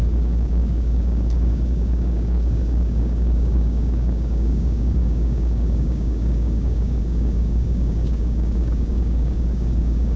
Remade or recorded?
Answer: remade